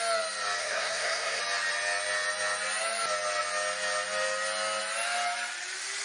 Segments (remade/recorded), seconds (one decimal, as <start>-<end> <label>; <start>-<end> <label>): 0.0-0.6 recorded; 0.6-1.4 remade; 1.4-6.0 recorded